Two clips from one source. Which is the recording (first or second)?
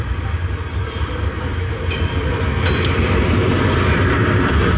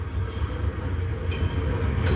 second